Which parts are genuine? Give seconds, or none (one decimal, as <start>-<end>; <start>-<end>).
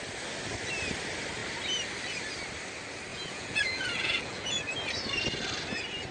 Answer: 0.0-3.1; 4.6-6.1